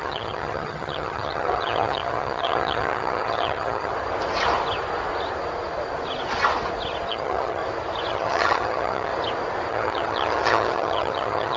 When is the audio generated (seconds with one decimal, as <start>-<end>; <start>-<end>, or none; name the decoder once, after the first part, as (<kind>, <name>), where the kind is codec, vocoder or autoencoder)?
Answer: 0.0-3.9 (vocoder, HiFi-GAN); 7.1-7.6; 8.1-9.1; 9.7-11.6